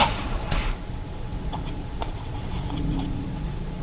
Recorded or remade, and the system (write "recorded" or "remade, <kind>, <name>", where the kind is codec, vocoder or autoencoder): remade, vocoder, Vocos